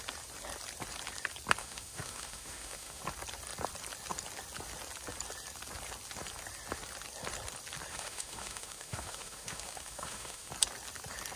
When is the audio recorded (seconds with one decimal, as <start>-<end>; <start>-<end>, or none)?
0.0-1.6; 3.0-7.9; 10.5-11.4

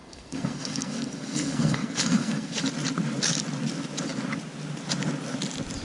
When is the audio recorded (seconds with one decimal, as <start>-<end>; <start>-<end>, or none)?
2.6-5.8

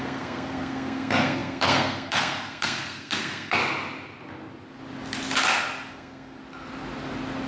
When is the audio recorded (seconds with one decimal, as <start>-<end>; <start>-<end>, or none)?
3.6-5.9; 6.4-7.5

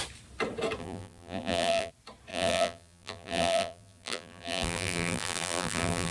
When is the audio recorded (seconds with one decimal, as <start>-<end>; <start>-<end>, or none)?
0.0-0.8; 1.9-2.3

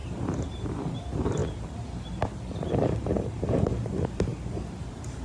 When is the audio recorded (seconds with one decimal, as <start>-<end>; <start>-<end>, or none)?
1.4-3.0; 4.3-4.8

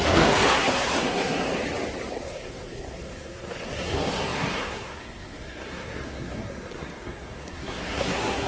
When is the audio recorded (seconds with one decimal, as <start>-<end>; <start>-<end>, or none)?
1.5-2.1

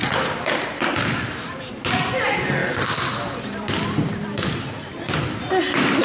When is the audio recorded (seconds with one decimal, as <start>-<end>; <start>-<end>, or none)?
2.6-3.4